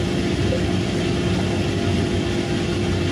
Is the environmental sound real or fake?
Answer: real